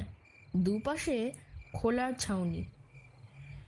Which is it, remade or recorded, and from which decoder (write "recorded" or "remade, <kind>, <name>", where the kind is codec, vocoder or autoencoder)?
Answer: recorded